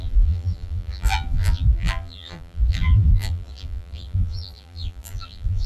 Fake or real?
fake